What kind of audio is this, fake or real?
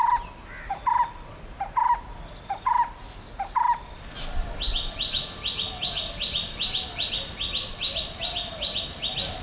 real